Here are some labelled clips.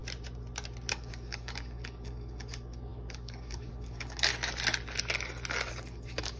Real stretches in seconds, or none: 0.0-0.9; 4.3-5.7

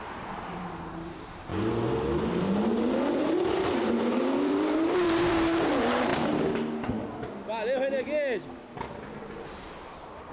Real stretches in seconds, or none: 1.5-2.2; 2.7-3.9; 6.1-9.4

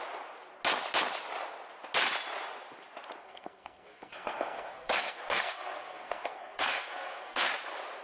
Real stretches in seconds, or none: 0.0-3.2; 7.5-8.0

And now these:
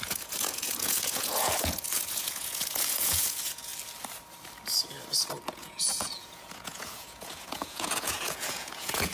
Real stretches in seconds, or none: 3.7-5.5

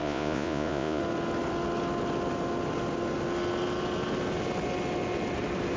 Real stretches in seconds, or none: 1.0-5.8

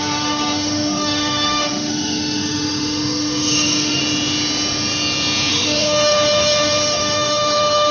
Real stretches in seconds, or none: 4.0-5.5